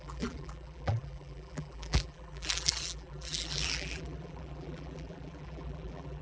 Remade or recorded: remade